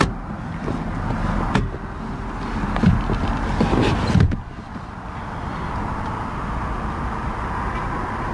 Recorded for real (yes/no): yes